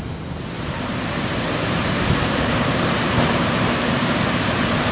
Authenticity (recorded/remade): remade